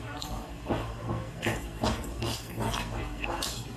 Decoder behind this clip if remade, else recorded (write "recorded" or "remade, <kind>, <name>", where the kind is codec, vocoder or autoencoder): remade, codec, SNAC